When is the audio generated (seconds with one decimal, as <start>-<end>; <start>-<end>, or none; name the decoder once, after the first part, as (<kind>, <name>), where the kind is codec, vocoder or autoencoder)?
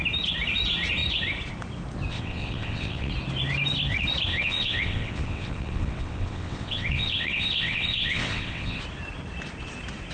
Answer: 2.1-3.1 (vocoder, WaveNeXt); 4.3-8.8